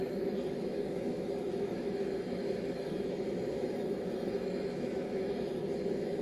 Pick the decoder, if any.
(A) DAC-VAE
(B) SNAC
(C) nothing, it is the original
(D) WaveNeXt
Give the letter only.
A